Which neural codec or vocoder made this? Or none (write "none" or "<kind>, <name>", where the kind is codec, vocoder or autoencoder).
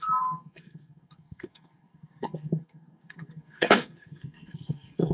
codec, SNAC